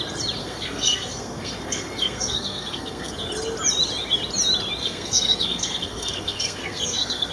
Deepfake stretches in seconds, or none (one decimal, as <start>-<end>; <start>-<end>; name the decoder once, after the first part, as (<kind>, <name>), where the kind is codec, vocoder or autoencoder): 0.4-3.1 (codec, SNAC); 4.8-7.3